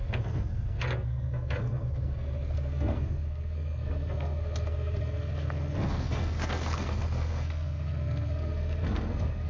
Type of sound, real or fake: fake